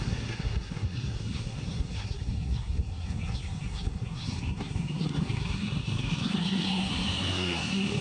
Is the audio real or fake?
fake